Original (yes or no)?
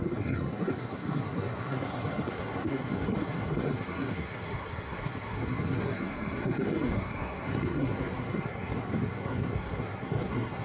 no